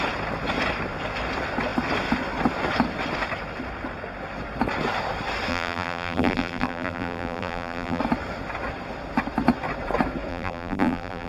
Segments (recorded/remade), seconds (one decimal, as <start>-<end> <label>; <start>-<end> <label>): 0.0-5.5 recorded; 5.5-8.0 remade; 8.0-10.3 recorded; 10.3-11.3 remade